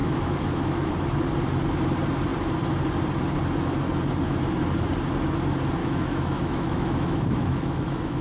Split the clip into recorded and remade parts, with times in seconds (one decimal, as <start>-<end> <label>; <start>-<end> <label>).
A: 0.0-0.9 remade; 0.9-5.8 recorded; 5.8-8.2 remade